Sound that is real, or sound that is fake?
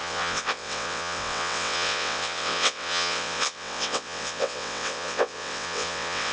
fake